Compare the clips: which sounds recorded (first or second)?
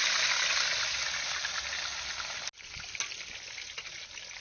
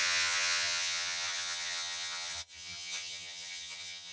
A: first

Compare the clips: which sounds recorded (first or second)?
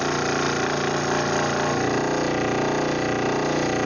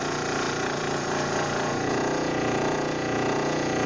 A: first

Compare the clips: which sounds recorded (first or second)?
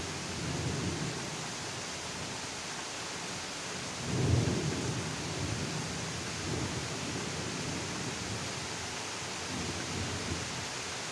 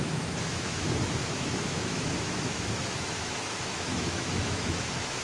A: first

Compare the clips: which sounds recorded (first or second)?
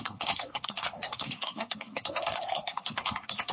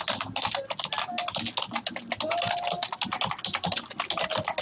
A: second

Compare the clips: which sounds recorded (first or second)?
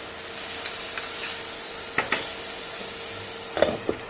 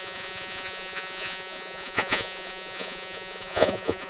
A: first